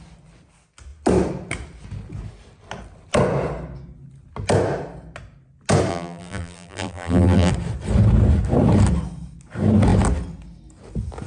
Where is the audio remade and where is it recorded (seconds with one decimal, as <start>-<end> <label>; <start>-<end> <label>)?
0.0-5.9 recorded; 5.9-7.5 remade; 7.5-11.3 recorded